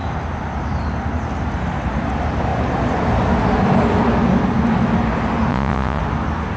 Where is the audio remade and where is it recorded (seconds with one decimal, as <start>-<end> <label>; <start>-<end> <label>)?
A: 0.0-5.5 recorded; 5.5-6.0 remade; 6.0-6.6 recorded